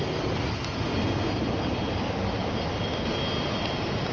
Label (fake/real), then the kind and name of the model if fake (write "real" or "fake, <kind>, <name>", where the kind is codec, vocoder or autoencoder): real